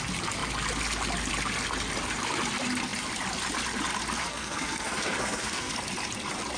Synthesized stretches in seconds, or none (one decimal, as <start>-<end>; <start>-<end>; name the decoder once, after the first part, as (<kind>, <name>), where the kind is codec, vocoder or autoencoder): 4.2-5.7 (codec, SNAC)